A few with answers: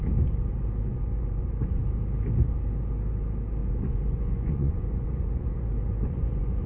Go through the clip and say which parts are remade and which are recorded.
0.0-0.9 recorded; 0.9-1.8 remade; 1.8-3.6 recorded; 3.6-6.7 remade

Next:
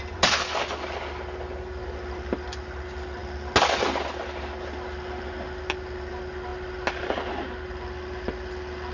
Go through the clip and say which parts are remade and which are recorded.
0.0-8.9 recorded

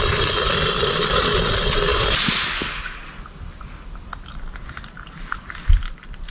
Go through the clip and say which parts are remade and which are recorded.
0.0-6.3 recorded

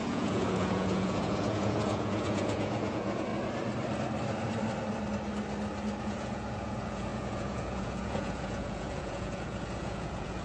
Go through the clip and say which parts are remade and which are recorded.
0.0-3.3 remade; 3.3-6.0 recorded; 6.0-10.4 remade

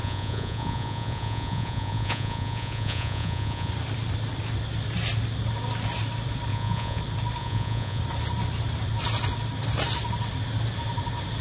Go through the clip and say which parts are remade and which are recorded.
0.0-3.7 remade; 3.7-6.5 recorded; 6.5-7.0 remade; 7.0-7.4 recorded; 7.4-8.0 remade; 8.0-11.4 recorded

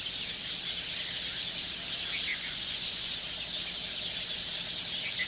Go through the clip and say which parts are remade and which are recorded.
0.0-2.3 recorded; 2.3-3.2 remade; 3.2-5.3 recorded

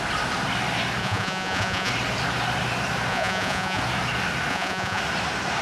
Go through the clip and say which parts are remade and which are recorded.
0.0-1.0 recorded; 1.0-1.9 remade; 1.9-3.1 recorded; 3.1-3.8 remade; 3.8-4.5 recorded; 4.5-5.0 remade; 5.0-5.6 recorded